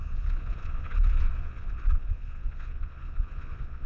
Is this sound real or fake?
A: fake